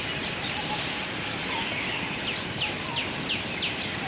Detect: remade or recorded recorded